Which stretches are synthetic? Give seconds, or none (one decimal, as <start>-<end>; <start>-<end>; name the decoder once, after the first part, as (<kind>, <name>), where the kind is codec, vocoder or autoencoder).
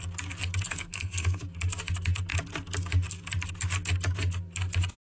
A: 0.7-1.4 (codec, SNAC)